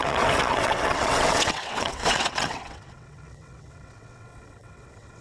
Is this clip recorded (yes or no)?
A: no